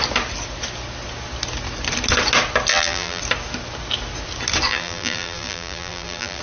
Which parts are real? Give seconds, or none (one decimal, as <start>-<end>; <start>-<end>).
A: 0.0-2.7; 3.2-4.7